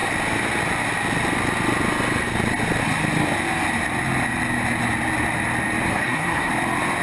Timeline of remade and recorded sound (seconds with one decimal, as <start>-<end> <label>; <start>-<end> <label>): 0.0-5.9 recorded; 5.9-6.5 remade; 6.5-7.0 recorded